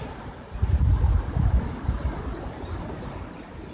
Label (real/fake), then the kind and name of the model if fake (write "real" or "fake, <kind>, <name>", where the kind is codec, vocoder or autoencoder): real